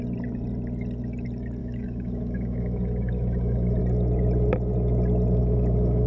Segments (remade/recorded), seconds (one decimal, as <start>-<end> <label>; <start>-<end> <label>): 0.0-1.6 recorded; 1.6-3.8 remade; 3.8-5.4 recorded; 5.4-6.1 remade